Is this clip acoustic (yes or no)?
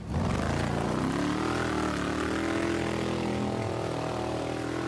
yes